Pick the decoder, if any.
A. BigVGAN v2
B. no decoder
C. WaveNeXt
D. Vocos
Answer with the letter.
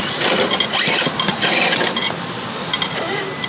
B